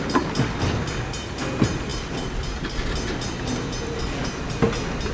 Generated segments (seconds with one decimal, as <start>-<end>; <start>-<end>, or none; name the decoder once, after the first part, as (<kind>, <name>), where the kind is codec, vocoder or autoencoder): none